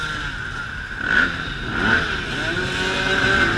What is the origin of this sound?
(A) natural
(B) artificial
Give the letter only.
A